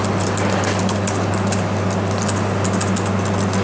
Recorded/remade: recorded